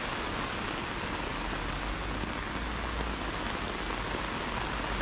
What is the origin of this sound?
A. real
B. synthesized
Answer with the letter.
A